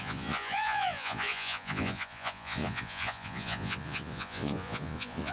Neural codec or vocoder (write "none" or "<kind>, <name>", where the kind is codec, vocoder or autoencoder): vocoder, Vocos